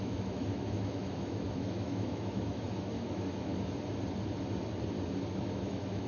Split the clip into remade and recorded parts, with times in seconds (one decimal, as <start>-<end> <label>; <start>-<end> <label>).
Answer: 0.0-3.5 remade; 3.5-5.3 recorded; 5.3-6.1 remade